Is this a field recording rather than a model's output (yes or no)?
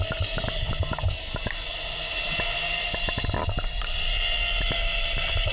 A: yes